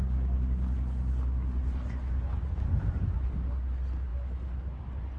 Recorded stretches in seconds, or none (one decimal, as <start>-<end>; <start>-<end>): 0.0-5.2